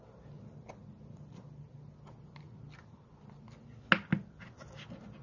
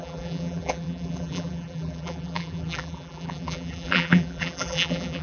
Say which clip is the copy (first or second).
second